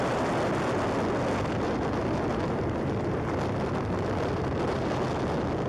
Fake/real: real